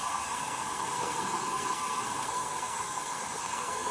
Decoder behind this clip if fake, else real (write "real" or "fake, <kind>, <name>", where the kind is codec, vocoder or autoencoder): fake, codec, SNAC